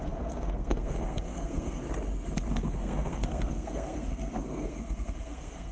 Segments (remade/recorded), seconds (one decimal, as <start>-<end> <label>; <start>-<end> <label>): 0.0-1.8 remade; 1.8-2.5 recorded; 2.5-5.7 remade